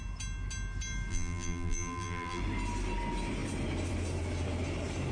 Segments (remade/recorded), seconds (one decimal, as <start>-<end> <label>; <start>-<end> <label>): 0.0-1.1 recorded; 1.1-2.4 remade; 2.4-5.1 recorded